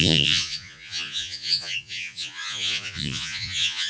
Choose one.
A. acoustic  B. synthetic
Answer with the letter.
B